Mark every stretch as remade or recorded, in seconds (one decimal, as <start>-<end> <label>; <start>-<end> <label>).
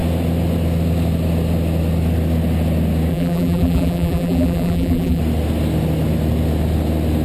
0.0-3.1 recorded; 3.1-5.2 remade; 5.2-7.2 recorded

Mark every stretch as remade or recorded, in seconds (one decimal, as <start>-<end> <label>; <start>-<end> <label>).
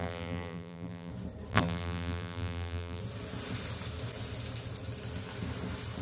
0.0-1.1 remade; 1.1-1.5 recorded; 1.5-3.0 remade; 3.0-6.0 recorded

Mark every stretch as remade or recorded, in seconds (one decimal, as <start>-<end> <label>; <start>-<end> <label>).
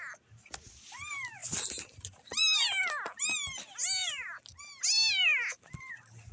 0.0-6.3 recorded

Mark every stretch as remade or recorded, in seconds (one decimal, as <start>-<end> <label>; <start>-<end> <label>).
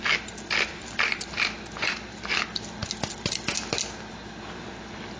0.0-0.7 recorded; 0.7-1.3 remade; 1.3-5.2 recorded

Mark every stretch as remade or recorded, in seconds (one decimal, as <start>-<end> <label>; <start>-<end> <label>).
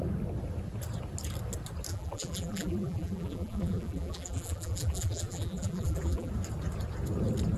0.0-1.9 recorded; 1.9-6.3 remade; 6.3-7.6 recorded